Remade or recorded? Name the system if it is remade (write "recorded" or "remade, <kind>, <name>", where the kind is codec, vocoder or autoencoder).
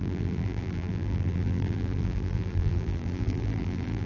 remade, vocoder, BigVGAN v2